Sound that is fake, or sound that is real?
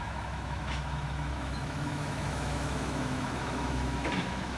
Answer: fake